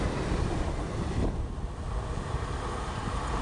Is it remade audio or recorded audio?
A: recorded